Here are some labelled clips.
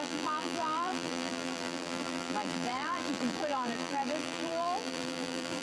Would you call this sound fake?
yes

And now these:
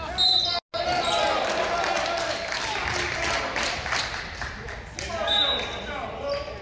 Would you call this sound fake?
no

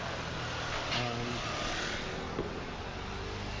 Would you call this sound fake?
no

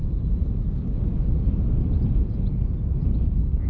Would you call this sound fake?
no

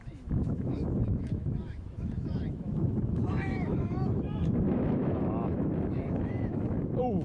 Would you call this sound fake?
yes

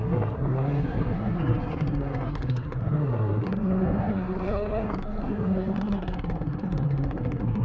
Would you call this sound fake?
yes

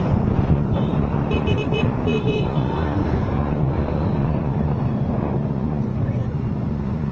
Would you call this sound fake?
yes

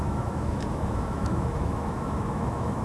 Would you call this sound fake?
yes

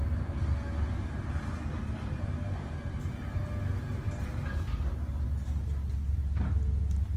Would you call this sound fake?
no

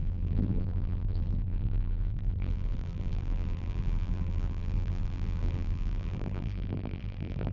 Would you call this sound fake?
yes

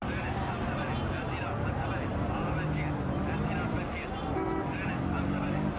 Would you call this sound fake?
no